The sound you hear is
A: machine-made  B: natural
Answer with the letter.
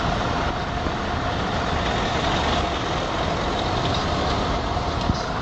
B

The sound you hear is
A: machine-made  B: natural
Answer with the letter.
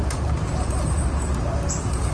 B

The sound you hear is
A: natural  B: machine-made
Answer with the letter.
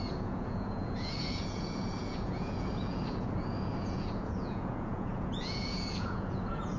B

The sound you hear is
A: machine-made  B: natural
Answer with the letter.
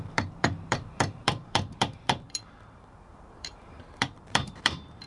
A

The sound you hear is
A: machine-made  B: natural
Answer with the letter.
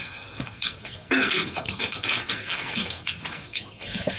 A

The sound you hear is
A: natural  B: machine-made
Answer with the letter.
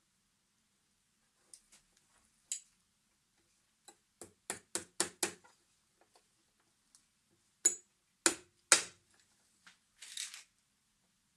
A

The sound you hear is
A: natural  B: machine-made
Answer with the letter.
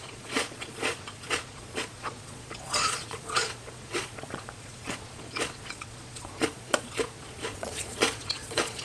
B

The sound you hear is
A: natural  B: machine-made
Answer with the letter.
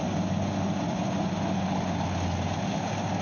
A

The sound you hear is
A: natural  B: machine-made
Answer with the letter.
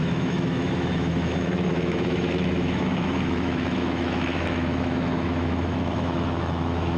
B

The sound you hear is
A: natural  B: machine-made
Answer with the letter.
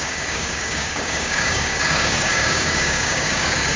B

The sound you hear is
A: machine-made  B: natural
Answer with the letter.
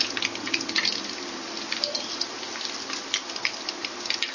B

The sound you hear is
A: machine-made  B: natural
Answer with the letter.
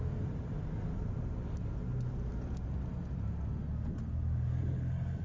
B